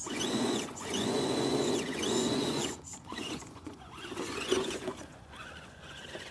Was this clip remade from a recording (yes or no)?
yes